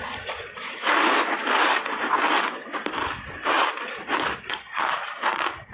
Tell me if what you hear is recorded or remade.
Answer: remade